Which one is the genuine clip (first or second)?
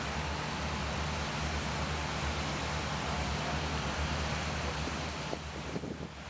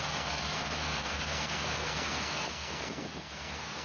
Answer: first